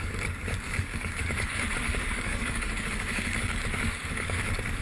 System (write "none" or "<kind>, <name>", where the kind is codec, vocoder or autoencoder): codec, DAC